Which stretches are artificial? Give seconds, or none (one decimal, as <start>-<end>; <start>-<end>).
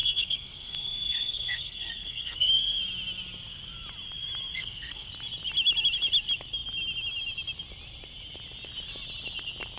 0.0-2.8; 4.5-5.1